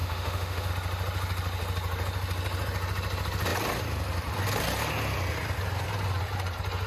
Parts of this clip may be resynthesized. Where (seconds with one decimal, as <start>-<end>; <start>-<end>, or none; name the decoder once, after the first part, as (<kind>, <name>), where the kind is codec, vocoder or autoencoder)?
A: 0.0-0.7 (autoencoder, DAC-VAE)